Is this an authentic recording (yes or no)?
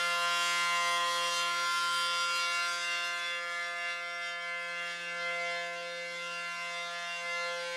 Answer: yes